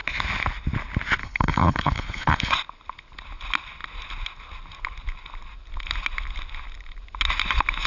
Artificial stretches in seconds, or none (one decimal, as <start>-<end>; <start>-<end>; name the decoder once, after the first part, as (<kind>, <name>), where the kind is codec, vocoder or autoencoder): 1.2-2.5 (codec, HILCodec)